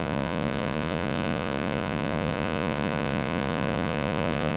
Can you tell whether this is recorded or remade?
remade